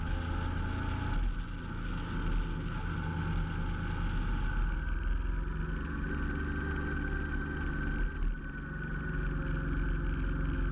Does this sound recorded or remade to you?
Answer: recorded